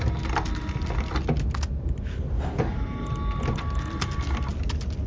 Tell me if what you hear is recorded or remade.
recorded